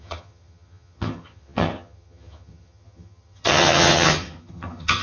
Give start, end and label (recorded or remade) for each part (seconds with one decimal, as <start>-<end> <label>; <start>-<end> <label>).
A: 0.0-5.0 remade